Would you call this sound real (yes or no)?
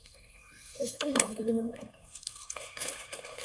no